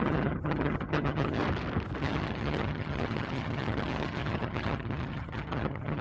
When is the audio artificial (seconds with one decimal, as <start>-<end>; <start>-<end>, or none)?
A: 0.0-1.4; 2.0-6.0